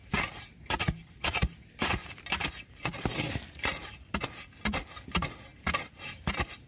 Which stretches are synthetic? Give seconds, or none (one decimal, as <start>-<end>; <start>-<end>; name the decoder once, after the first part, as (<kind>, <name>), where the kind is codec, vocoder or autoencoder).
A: 0.0-2.2 (vocoder, BigVGAN v2); 3.1-4.0; 5.5-6.2